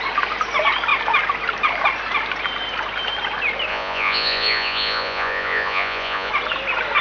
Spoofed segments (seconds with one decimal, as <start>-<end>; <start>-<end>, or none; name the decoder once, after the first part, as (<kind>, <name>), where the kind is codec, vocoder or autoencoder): 3.7-6.3 (vocoder, Vocos)